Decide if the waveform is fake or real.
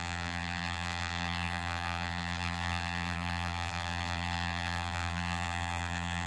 fake